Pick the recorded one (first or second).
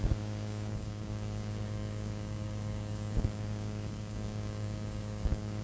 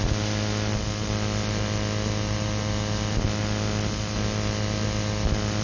second